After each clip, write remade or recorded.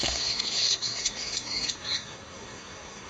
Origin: remade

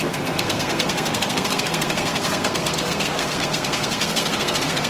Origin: remade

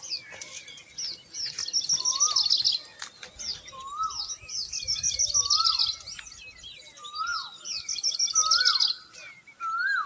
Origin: recorded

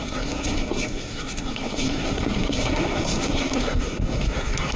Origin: remade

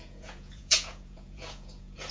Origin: remade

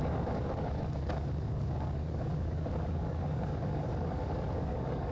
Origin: remade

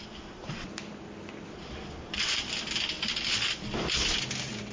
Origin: recorded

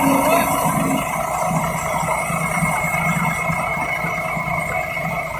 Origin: recorded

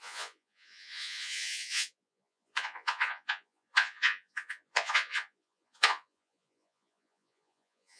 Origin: remade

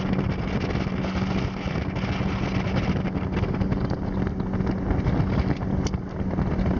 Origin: recorded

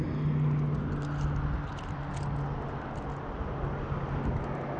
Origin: recorded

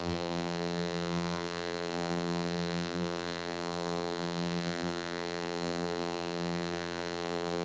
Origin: remade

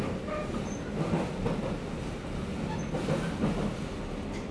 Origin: recorded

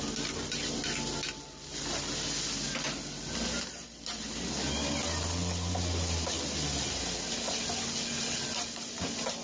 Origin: recorded